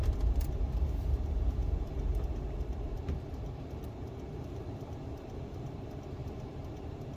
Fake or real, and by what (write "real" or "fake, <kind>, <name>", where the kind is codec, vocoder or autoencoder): fake, vocoder, BigVGAN v2